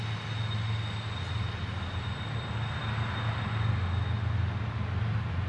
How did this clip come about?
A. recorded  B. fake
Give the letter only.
A